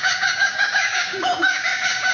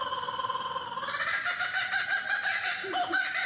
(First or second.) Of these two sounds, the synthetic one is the first